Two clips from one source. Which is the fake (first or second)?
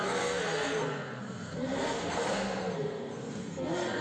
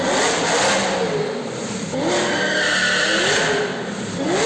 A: first